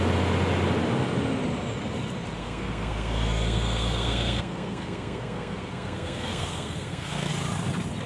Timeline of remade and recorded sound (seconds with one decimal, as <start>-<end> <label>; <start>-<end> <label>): 0.0-2.4 recorded; 2.4-7.3 remade; 7.3-8.1 recorded